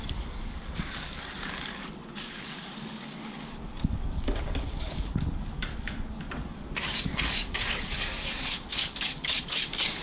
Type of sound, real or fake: fake